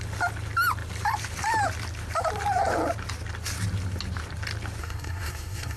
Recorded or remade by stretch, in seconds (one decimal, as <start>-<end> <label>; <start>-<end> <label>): 0.0-4.8 recorded; 4.8-5.8 remade

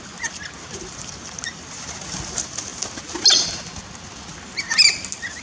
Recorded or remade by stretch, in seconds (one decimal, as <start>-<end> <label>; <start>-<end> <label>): 0.0-5.4 recorded

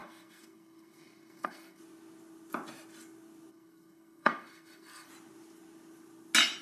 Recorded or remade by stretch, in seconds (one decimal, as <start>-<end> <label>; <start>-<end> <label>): 0.0-1.8 remade; 1.8-3.5 recorded; 3.5-5.1 remade; 5.1-6.6 recorded

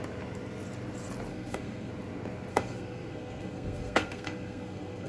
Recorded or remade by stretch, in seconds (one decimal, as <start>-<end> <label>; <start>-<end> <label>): 0.0-1.3 recorded; 1.3-1.9 remade; 1.9-2.5 recorded; 2.5-5.1 remade